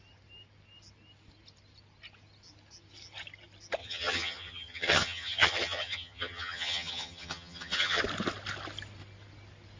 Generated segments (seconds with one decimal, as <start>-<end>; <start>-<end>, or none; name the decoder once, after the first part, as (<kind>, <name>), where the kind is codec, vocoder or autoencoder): 3.8-8.0 (vocoder, HiFi-GAN)